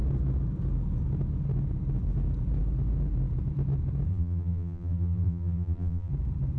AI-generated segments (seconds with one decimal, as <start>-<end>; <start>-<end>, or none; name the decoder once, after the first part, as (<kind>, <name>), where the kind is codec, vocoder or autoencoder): 4.1-6.1 (vocoder, BigVGAN v2)